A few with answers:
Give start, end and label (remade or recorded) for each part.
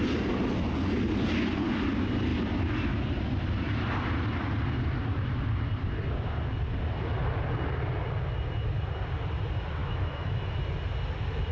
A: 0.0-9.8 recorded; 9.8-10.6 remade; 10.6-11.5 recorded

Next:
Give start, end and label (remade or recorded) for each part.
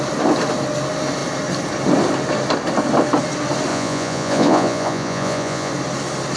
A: 0.0-3.7 recorded; 3.7-5.7 remade; 5.7-6.4 recorded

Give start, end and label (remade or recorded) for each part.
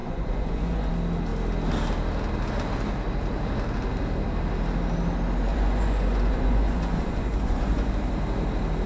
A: 0.0-0.9 remade; 0.9-5.5 recorded; 5.5-7.9 remade; 7.9-8.9 recorded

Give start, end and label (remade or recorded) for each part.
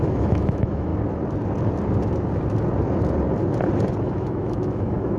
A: 0.0-0.9 remade; 0.9-4.0 recorded; 4.0-5.2 remade